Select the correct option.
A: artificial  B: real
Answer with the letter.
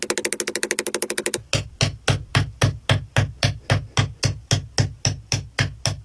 B